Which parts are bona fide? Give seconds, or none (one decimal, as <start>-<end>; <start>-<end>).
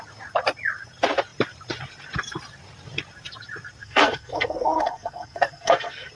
0.0-3.8